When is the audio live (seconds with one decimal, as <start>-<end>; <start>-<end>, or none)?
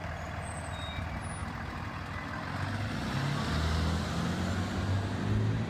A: 1.0-1.4; 1.9-5.7